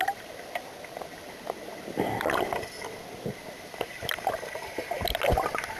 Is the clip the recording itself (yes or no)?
yes